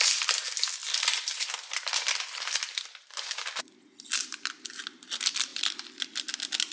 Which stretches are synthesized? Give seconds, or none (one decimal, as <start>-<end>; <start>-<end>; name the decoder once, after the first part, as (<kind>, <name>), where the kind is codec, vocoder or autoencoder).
0.8-4.8 (vocoder, BigVGAN v2); 5.5-6.3